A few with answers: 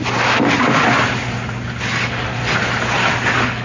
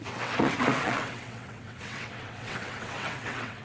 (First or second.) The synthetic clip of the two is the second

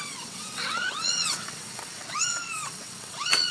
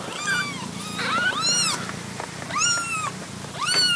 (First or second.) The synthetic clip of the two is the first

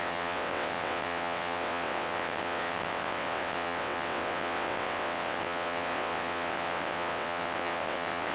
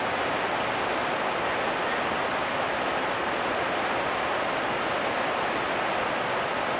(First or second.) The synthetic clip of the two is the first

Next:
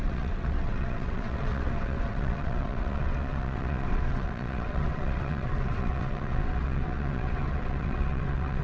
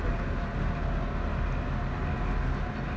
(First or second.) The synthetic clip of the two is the first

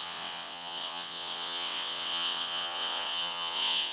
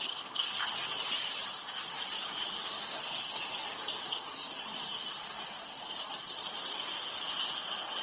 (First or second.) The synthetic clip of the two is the first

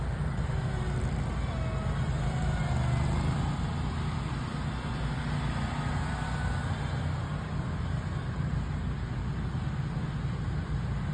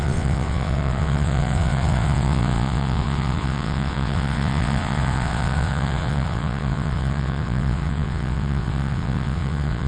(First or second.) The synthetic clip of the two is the second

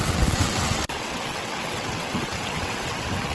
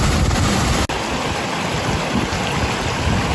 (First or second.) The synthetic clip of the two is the first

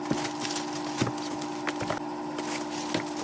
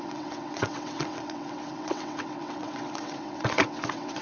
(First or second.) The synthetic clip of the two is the second